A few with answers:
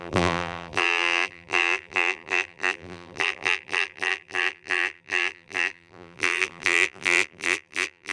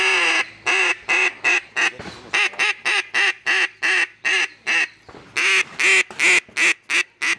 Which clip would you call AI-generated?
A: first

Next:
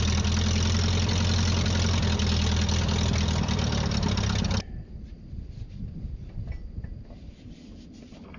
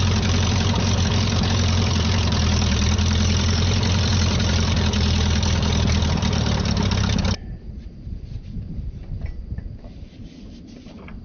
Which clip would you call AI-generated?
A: second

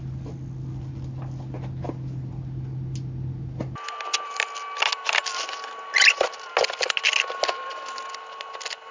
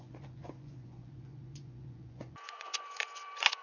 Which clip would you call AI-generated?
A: second